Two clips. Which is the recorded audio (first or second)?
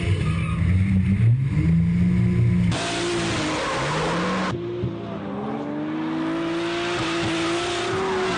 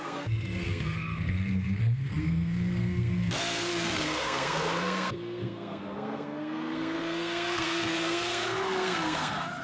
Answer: first